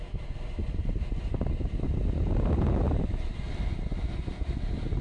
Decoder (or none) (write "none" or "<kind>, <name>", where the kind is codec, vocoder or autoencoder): none